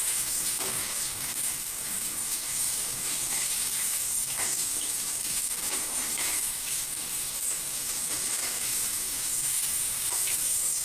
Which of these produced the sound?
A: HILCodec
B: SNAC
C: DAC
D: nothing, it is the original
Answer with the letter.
C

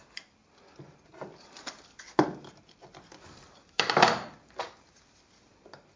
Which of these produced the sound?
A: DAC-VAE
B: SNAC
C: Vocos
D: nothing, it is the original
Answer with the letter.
D